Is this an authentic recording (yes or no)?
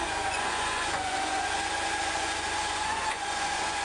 no